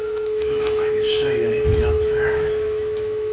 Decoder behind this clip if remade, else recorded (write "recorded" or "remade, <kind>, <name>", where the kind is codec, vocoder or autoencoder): remade, autoencoder, DAC-VAE